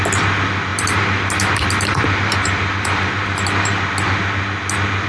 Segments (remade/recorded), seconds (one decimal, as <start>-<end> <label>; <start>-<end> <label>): 0.0-0.7 recorded; 0.7-3.8 remade; 3.8-5.1 recorded